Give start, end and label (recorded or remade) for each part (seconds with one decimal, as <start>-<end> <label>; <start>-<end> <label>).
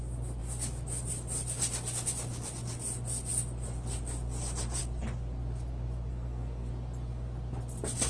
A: 0.0-6.1 recorded; 6.1-6.7 remade; 6.7-8.1 recorded